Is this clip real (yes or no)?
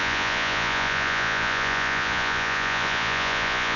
no